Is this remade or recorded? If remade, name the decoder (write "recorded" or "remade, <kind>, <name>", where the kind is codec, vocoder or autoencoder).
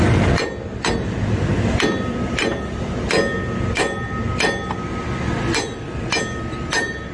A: recorded